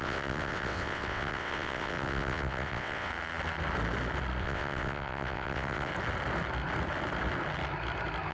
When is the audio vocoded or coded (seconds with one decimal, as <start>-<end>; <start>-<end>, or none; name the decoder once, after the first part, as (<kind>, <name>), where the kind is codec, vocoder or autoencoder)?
0.0-3.1 (vocoder, WaveNeXt); 4.4-5.9